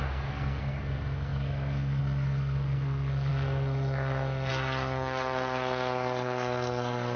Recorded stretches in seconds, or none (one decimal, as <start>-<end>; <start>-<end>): none